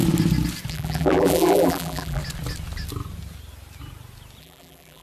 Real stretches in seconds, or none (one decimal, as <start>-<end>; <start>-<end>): 0.0-0.7; 2.2-4.4